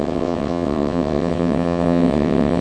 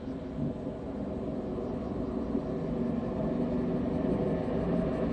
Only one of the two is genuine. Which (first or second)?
second